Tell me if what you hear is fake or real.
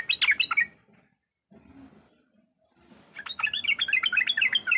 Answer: real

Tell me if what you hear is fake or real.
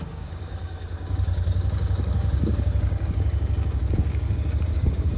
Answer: fake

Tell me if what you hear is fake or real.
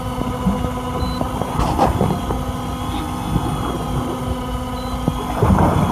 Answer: real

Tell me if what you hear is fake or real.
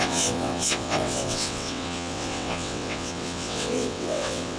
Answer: fake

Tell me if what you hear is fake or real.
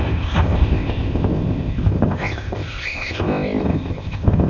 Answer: fake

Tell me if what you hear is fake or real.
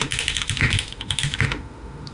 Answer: fake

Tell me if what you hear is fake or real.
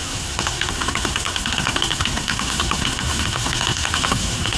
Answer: fake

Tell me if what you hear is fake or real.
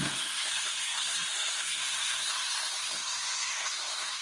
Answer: fake